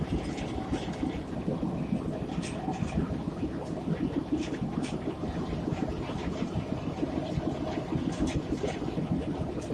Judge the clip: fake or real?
real